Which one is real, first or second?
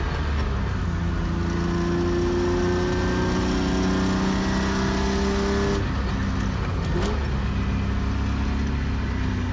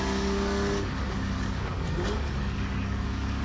first